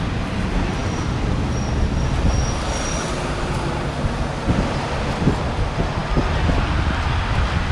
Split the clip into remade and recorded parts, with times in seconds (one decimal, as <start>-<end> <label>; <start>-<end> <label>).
0.0-7.7 recorded